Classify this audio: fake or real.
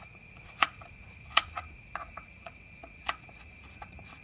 fake